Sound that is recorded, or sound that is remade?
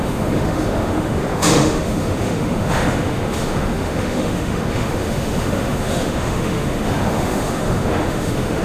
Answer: remade